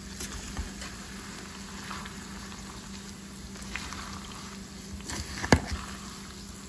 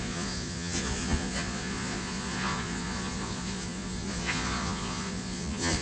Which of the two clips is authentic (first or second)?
first